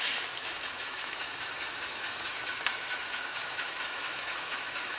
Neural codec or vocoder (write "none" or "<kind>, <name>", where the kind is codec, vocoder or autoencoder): autoencoder, DAC-VAE